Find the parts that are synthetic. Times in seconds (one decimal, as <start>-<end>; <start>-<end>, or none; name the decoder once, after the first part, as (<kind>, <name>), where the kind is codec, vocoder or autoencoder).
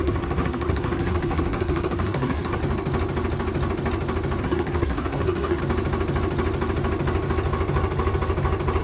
0.0-2.6 (codec, SNAC); 4.4-5.6